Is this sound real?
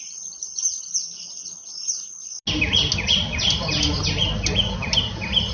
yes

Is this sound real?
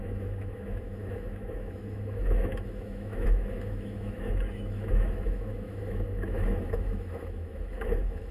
no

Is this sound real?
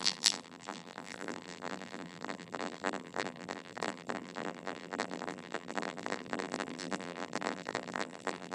no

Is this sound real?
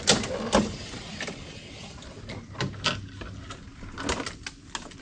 yes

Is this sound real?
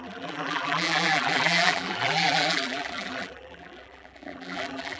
no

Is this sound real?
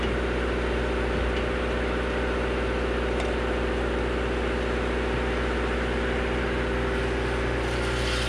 no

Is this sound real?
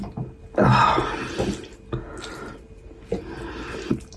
yes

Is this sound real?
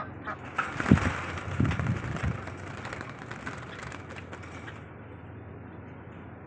yes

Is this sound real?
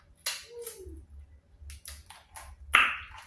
yes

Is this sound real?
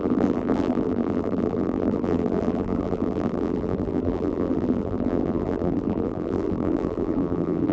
no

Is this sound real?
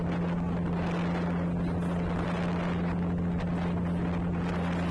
yes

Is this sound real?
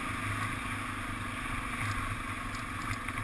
yes